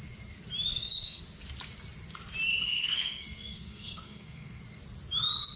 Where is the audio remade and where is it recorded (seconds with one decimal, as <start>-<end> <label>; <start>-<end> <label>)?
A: 0.0-0.7 recorded; 0.7-1.2 remade; 1.2-2.5 recorded; 2.5-4.6 remade; 4.6-5.6 recorded